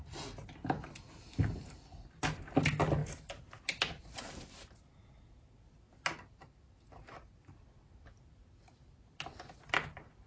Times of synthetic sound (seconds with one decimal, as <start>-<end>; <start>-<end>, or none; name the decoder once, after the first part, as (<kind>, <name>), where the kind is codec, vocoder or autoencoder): none